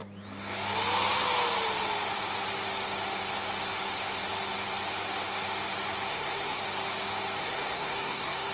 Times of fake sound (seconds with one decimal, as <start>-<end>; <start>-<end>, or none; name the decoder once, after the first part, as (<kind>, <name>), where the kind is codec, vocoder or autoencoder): 6.1-6.6 (codec, SNAC); 7.4-8.5